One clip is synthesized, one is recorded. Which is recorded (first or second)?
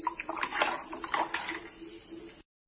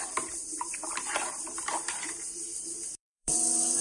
first